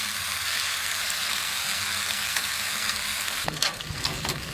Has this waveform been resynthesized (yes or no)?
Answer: yes